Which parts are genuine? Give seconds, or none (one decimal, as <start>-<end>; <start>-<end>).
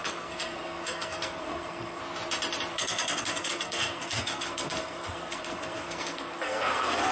2.0-2.7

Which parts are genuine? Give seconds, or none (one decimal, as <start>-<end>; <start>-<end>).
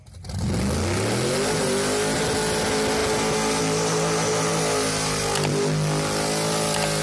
0.0-7.0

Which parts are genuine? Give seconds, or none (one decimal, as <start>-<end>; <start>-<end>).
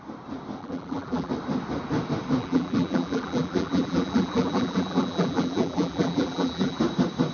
0.0-0.6; 1.3-2.4; 6.8-7.3